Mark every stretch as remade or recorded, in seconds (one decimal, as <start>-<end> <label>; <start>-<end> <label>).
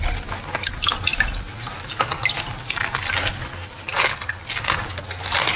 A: 0.0-5.6 recorded